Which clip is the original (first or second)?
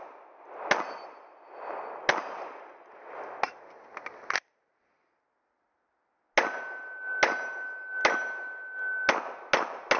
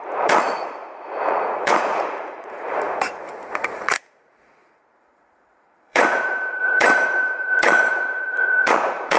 first